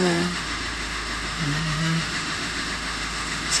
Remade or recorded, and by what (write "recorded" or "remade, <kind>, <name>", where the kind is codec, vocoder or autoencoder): remade, autoencoder, DAC-VAE